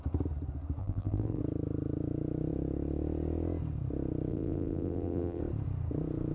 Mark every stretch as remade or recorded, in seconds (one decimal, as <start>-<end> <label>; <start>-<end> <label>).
0.0-0.8 recorded; 0.8-1.4 remade; 1.4-4.3 recorded; 4.3-5.4 remade; 5.4-6.3 recorded